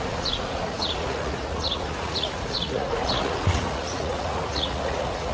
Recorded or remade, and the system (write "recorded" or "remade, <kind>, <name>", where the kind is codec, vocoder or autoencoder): remade, vocoder, Vocos